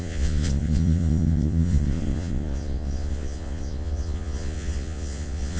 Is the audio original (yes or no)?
no